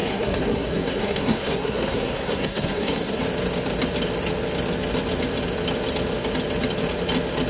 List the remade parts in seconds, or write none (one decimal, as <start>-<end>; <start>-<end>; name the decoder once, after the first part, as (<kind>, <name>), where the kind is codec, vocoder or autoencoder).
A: 0.0-3.2 (codec, SNAC)